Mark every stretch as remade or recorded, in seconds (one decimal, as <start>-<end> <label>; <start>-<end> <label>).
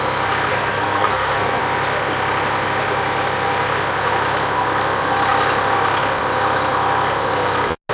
0.0-0.5 recorded; 0.5-1.6 remade; 1.6-7.9 recorded